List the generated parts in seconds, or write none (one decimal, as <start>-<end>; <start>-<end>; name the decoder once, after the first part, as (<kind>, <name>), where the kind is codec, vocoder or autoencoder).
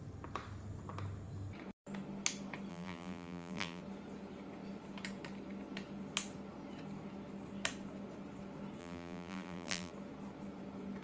2.7-3.8 (vocoder, BigVGAN v2); 8.8-9.9